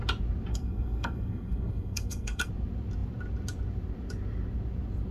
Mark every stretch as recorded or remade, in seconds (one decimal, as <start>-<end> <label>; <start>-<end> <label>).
0.0-0.5 recorded; 0.5-2.5 remade; 2.5-5.1 recorded